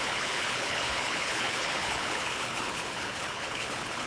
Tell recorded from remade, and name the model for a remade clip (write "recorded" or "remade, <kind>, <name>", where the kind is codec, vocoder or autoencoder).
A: remade, codec, HILCodec